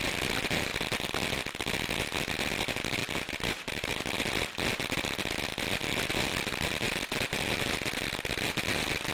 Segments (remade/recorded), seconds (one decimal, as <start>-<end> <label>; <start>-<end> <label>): 0.0-3.0 recorded; 3.0-4.0 remade; 4.0-9.1 recorded